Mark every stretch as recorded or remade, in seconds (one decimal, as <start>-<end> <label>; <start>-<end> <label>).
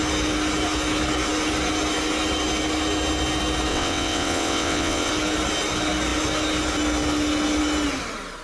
0.0-3.7 recorded; 3.7-5.1 remade; 5.1-8.4 recorded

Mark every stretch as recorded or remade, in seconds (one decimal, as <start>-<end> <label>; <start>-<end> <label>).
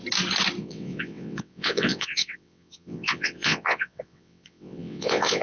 0.0-0.6 recorded; 0.6-5.4 remade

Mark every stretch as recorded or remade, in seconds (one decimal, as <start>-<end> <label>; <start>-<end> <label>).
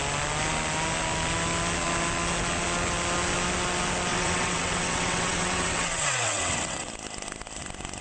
0.0-4.1 recorded; 4.1-6.9 remade; 6.9-8.0 recorded